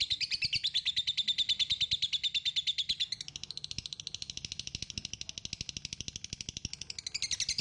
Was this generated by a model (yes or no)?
no